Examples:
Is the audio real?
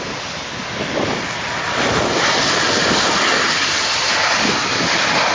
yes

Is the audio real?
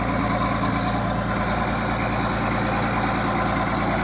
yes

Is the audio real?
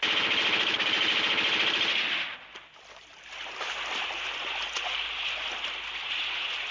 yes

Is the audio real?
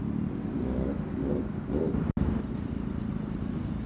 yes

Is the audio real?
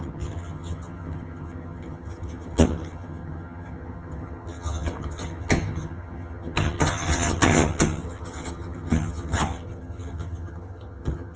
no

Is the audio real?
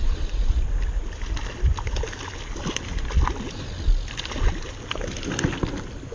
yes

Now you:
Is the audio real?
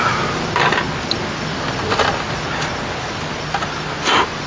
yes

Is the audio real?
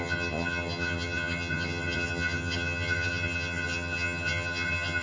no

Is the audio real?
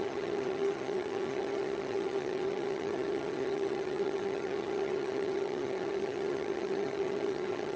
no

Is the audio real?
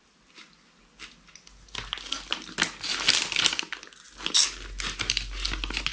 yes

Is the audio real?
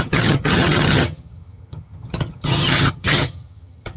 no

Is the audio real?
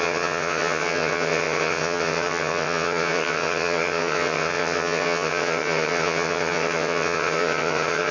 no